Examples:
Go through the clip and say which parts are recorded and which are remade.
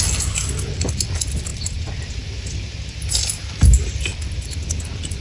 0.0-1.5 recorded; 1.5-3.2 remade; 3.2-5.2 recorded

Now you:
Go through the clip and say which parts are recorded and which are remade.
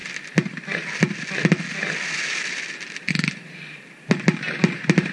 0.0-1.8 recorded; 1.8-3.8 remade; 3.8-5.1 recorded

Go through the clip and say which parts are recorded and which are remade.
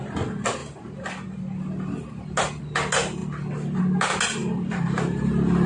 0.0-4.4 recorded; 4.4-5.7 remade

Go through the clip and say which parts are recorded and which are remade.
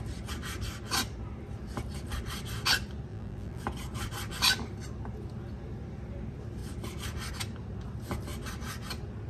0.0-3.1 recorded; 3.1-3.6 remade; 3.6-9.3 recorded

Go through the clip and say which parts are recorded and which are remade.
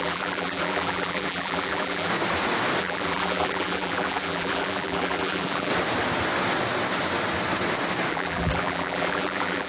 0.0-2.1 remade; 2.1-2.8 recorded; 2.8-5.7 remade; 5.7-8.1 recorded; 8.1-9.7 remade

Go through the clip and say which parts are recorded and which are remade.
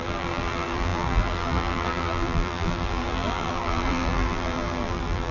0.0-5.3 remade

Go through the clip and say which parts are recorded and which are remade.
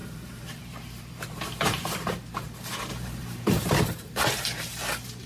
0.0-5.3 remade